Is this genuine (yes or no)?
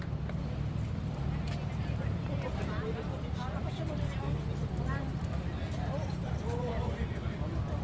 yes